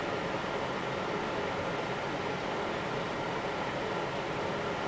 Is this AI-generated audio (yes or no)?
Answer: no